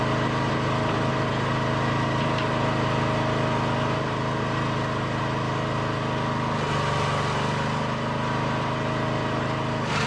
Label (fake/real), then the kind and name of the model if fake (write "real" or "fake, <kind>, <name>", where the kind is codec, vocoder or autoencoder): real